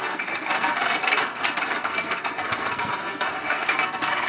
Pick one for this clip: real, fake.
fake